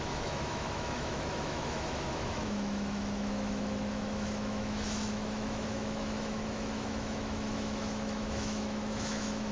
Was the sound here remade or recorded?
remade